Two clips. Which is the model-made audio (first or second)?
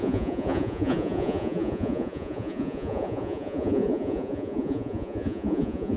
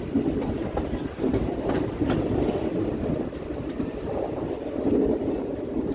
first